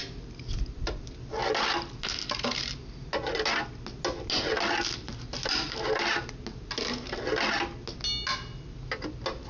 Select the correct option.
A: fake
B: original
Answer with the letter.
B